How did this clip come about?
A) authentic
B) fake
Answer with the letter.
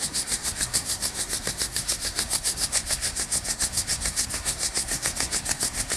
B